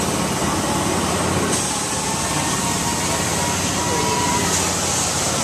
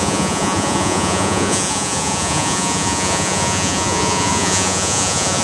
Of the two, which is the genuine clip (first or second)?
first